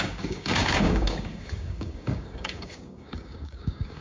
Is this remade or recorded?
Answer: remade